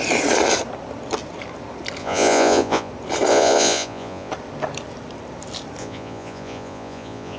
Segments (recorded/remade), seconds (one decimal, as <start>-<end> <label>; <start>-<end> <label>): 0.0-2.0 recorded; 2.0-2.9 remade; 2.9-3.3 recorded; 3.3-4.3 remade; 4.3-5.8 recorded; 5.8-7.4 remade